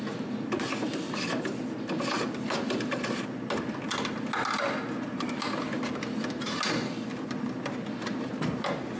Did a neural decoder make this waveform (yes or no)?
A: no